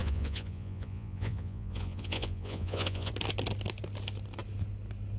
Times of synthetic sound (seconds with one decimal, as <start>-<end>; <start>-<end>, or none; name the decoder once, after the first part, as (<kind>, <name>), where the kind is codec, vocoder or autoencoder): 0.0-3.1 (vocoder, Vocos)